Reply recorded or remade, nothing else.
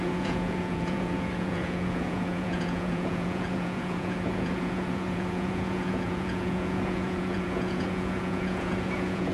remade